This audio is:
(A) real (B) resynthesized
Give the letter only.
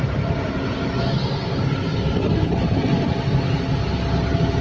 A